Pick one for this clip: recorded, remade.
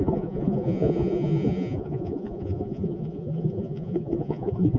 remade